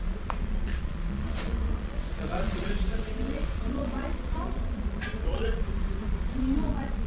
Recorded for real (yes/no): no